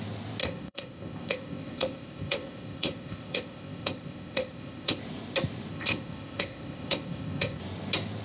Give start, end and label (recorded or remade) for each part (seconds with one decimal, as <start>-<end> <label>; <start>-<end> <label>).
0.0-0.4 recorded; 0.4-5.0 remade; 5.0-5.7 recorded; 5.7-7.6 remade; 7.6-8.2 recorded